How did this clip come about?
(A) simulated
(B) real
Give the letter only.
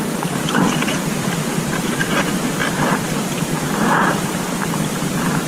A